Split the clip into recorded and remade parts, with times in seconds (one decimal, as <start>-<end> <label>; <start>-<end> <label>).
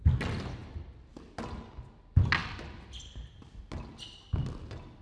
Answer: 0.0-5.0 recorded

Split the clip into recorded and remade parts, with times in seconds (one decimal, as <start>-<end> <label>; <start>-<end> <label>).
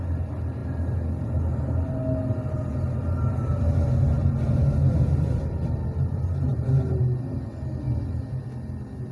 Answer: 0.0-9.1 recorded